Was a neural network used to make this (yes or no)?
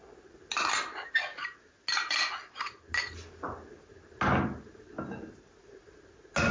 no